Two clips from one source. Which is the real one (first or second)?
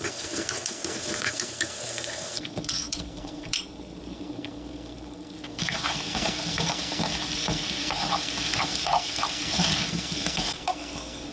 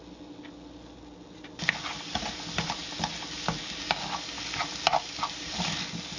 second